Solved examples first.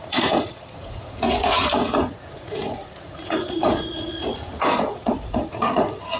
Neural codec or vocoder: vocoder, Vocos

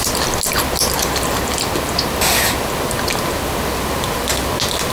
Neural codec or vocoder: none